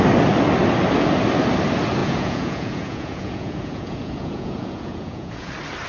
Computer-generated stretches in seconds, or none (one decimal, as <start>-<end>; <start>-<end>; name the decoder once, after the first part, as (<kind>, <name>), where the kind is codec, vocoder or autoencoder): 2.0-5.5 (vocoder, Vocos)